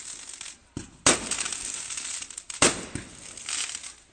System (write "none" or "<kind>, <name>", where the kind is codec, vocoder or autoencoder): none